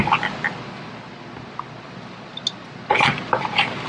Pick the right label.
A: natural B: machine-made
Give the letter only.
A